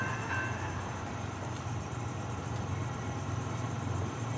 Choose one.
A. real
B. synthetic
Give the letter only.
B